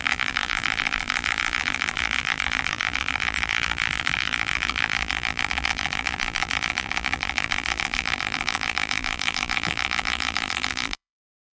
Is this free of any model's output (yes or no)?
no